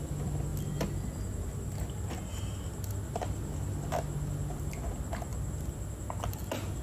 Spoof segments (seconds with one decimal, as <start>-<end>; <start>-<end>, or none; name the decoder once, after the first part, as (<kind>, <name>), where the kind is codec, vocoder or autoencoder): none